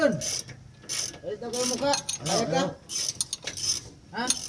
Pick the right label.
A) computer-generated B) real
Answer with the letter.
B